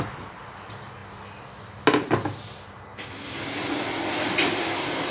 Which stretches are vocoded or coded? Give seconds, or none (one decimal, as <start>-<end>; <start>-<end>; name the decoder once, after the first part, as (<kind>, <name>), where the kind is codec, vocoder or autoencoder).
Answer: none

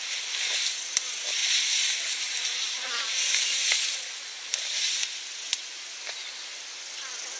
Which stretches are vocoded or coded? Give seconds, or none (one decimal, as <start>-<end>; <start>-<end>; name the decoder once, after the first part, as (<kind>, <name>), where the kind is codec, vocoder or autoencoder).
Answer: none

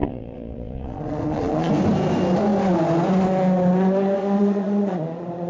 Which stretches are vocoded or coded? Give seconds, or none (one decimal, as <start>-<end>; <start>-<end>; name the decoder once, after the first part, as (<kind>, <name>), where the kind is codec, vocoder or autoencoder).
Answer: 0.0-1.7 (vocoder, Vocos); 4.2-5.5